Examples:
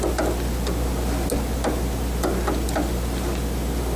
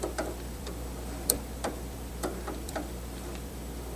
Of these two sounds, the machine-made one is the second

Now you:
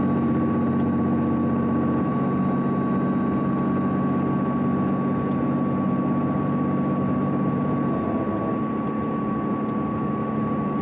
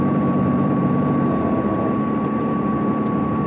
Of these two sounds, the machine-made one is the second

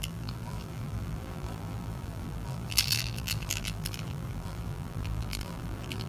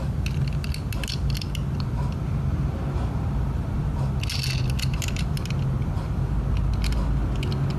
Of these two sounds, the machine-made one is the first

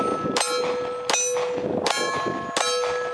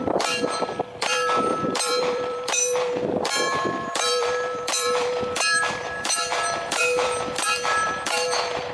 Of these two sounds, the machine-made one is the second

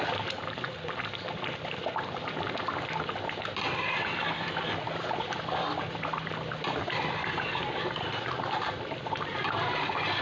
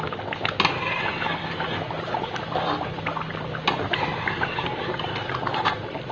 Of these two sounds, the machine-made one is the first